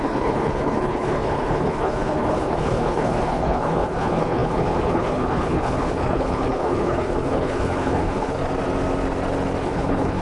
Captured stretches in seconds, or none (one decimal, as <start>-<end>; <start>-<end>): 8.4-9.6